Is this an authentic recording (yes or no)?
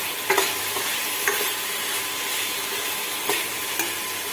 no